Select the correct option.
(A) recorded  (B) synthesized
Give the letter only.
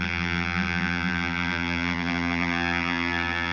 B